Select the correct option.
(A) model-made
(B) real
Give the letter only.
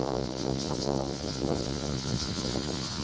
A